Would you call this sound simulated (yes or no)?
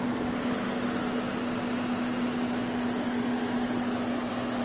no